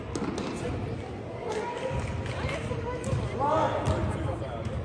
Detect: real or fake real